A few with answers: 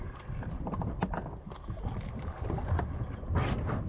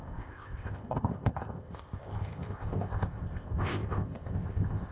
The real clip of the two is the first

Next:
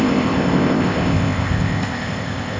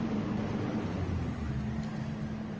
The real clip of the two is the second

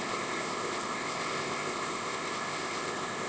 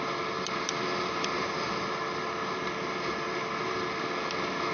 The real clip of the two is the second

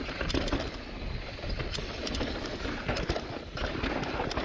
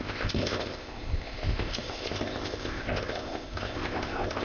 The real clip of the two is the first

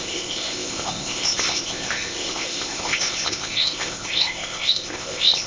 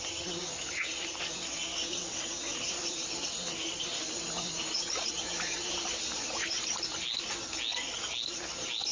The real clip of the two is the second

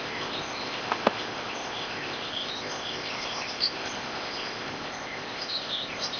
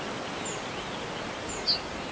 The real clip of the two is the second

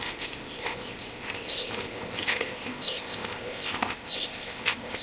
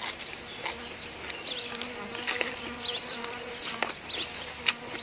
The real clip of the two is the second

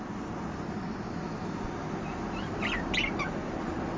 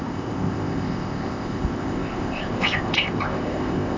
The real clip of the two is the first